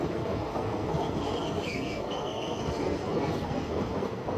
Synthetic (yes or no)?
yes